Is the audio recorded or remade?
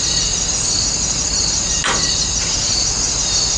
recorded